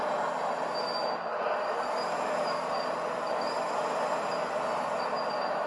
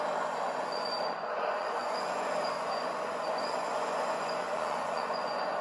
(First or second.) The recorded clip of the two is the first